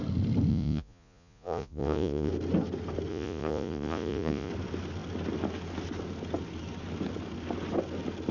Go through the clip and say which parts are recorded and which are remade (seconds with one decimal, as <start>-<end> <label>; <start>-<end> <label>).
0.0-0.5 recorded; 0.5-2.3 remade; 2.3-3.1 recorded; 3.1-4.5 remade; 4.5-8.3 recorded